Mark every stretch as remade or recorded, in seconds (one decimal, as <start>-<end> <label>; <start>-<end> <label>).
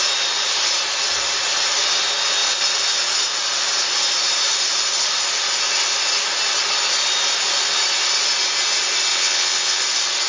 0.0-9.1 recorded; 9.1-9.8 remade; 9.8-10.3 recorded